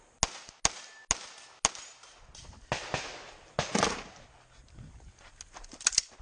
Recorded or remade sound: recorded